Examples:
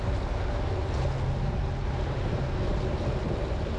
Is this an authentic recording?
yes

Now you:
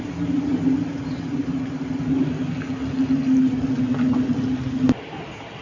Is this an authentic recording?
yes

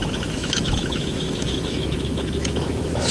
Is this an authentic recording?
no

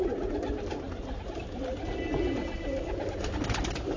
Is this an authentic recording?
yes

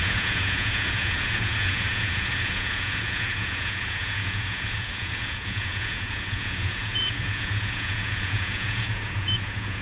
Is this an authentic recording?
no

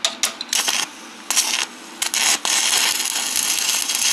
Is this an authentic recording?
yes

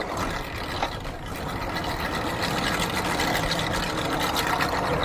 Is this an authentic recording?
yes